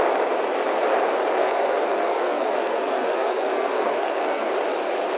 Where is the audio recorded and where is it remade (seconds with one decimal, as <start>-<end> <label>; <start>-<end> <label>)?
0.0-1.4 recorded; 1.4-4.5 remade; 4.5-5.2 recorded